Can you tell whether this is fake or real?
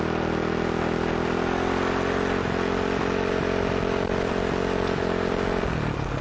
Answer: real